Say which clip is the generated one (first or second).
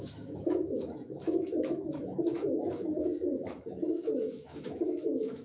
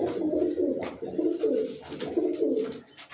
first